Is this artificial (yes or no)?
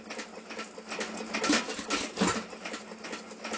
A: no